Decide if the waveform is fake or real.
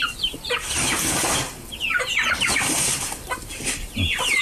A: real